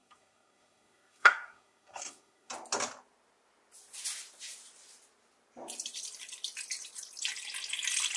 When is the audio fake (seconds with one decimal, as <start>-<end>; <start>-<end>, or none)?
0.0-2.5